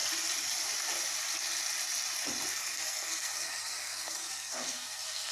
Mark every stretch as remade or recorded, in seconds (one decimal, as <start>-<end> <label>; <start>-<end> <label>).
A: 0.0-2.5 recorded; 2.5-5.3 remade